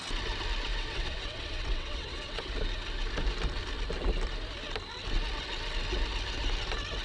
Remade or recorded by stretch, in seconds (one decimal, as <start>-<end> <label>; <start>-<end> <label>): 0.0-0.7 recorded; 0.7-2.5 remade; 2.5-7.0 recorded

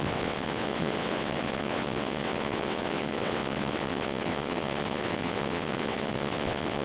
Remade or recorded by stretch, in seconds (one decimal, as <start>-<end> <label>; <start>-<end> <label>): 0.0-6.8 remade

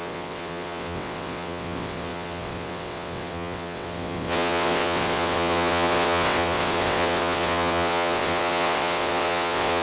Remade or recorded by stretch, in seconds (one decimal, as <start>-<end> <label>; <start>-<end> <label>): 0.0-9.8 remade

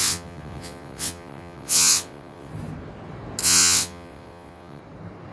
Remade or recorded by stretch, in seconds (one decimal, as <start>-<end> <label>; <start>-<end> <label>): 0.0-2.5 remade; 2.5-3.4 recorded; 3.4-4.8 remade; 4.8-5.3 recorded

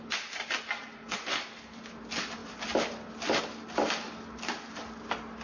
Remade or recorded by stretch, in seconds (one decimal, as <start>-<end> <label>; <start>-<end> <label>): 0.0-5.4 recorded